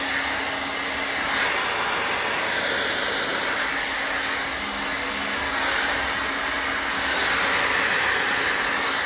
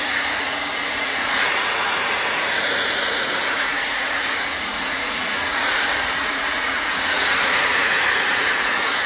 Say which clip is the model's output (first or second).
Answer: second